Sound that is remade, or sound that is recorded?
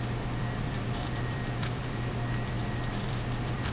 remade